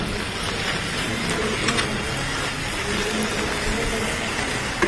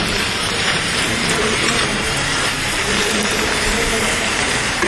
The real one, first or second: first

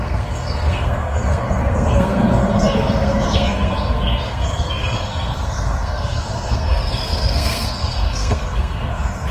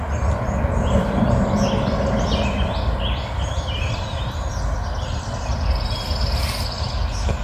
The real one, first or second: second